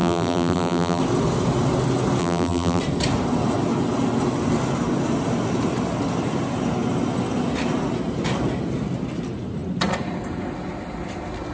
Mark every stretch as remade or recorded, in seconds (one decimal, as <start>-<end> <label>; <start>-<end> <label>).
0.0-1.0 remade; 1.0-2.2 recorded; 2.2-2.8 remade; 2.8-11.5 recorded